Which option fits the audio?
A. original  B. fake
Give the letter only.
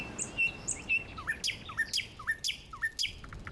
A